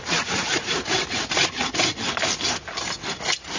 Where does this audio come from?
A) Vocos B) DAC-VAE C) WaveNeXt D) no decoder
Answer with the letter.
D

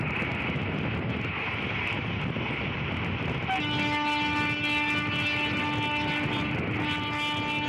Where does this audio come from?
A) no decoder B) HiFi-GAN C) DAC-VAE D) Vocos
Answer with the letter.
A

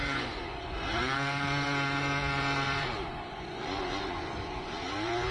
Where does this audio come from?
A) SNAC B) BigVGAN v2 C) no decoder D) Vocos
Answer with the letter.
D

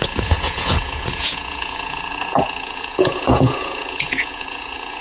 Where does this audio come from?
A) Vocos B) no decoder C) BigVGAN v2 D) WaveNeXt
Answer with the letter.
A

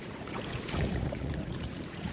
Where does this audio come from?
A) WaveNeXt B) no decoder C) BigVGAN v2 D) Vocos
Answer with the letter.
D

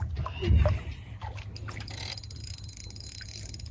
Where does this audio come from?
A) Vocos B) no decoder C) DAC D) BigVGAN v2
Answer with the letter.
B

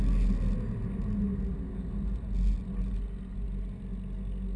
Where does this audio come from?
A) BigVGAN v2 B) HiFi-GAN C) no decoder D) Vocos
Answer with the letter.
C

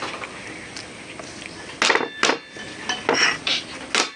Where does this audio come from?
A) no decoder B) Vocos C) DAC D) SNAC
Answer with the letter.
A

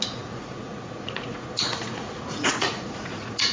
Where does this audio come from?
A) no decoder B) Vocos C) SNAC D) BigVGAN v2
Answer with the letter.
B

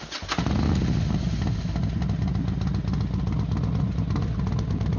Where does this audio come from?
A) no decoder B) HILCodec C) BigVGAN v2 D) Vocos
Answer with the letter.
A